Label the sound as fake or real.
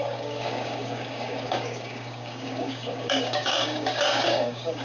fake